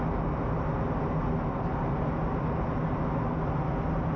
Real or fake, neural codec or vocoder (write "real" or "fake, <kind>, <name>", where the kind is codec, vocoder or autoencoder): real